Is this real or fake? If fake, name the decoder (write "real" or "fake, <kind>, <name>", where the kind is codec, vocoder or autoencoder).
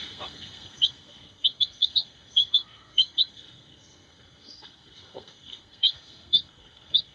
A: fake, codec, SNAC